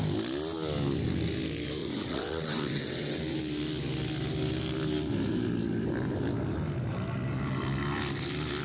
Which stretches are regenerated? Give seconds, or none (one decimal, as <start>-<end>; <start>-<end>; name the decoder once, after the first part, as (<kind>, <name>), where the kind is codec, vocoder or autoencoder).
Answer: 1.8-3.2 (vocoder, WaveNeXt)